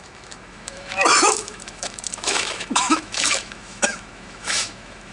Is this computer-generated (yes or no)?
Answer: yes